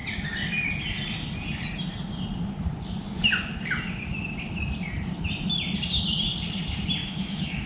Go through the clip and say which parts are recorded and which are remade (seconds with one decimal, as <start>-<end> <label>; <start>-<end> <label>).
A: 0.0-7.0 recorded; 7.0-7.7 remade